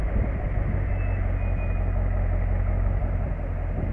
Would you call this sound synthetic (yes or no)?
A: no